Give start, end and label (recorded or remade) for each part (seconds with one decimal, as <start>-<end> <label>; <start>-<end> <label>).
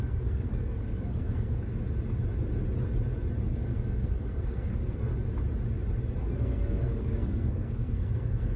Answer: 0.0-1.7 remade; 1.7-3.5 recorded; 3.5-5.1 remade; 5.1-6.2 recorded; 6.2-8.6 remade